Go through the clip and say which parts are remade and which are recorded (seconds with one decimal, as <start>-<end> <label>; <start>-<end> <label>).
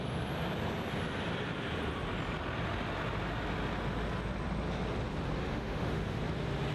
0.0-5.4 recorded; 5.4-6.2 remade; 6.2-6.7 recorded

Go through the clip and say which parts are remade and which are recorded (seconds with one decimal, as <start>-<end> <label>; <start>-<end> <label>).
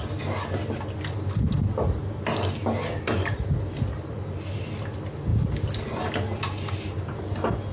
0.0-7.7 recorded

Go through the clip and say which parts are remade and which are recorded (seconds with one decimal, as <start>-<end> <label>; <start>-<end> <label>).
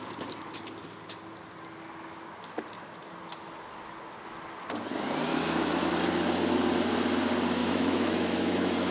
0.0-5.3 recorded; 5.3-5.9 remade; 5.9-7.6 recorded; 7.6-8.9 remade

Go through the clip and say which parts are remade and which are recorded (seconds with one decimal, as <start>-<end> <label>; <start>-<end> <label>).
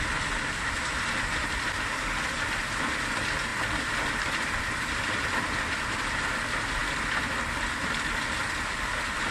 0.0-9.3 recorded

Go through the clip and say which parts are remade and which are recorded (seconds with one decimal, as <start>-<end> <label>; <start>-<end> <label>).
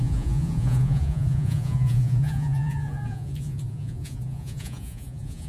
0.0-5.5 remade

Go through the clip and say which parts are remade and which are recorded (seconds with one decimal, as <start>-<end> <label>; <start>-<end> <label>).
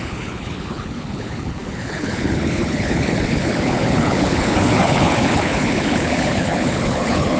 0.0-7.4 remade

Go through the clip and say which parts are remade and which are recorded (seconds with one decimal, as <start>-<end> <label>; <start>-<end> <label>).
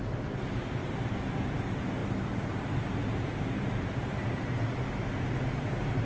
0.0-0.8 recorded; 0.8-1.4 remade; 1.4-6.0 recorded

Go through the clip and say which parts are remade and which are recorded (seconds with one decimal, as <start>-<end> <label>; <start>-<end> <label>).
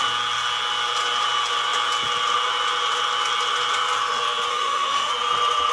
0.0-4.5 recorded; 4.5-5.1 remade; 5.1-5.7 recorded